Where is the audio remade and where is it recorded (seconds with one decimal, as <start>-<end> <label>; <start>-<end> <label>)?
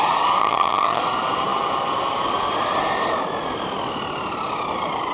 0.0-0.4 recorded; 0.4-1.0 remade; 1.0-5.1 recorded